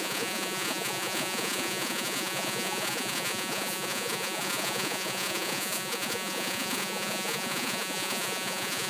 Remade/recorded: remade